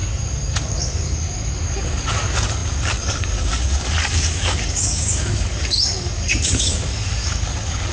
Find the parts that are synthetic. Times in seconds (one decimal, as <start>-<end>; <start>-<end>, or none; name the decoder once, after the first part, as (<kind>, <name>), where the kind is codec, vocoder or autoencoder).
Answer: 0.0-7.9 (codec, DAC)